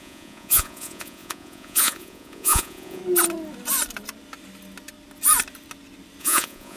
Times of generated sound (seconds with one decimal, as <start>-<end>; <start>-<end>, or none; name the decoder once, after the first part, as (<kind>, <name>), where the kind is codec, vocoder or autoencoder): 0.0-3.0 (vocoder, Vocos); 6.2-6.8

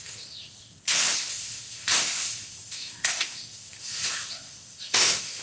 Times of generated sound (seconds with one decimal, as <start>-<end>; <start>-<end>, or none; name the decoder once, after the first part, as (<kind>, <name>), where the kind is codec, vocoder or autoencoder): 0.0-5.4 (codec, ZipCodec)

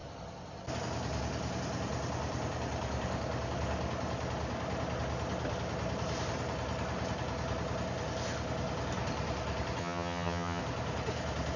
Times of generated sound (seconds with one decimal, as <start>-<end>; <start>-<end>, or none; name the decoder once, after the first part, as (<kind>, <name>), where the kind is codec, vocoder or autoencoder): 9.8-10.6 (vocoder, HiFi-GAN)

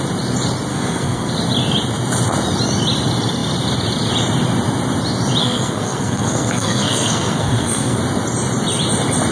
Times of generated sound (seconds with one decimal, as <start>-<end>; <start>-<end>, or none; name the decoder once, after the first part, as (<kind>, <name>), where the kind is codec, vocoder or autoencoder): 0.7-1.3 (codec, SNAC); 5.4-8.0

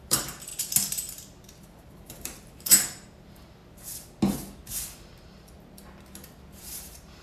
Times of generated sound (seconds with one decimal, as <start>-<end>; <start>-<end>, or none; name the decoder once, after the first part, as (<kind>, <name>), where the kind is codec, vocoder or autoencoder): 0.0-0.5 (vocoder, BigVGAN v2); 1.6-3.6; 6.6-7.2